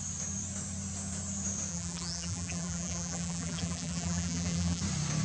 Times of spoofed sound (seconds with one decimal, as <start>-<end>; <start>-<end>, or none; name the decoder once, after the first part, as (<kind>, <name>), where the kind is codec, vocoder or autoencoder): 1.7-4.8 (vocoder, BigVGAN v2)